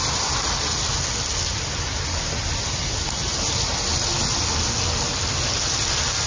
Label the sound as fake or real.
real